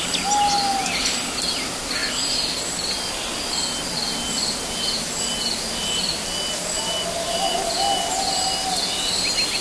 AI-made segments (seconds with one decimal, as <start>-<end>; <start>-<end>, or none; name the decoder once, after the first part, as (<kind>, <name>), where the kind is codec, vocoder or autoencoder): none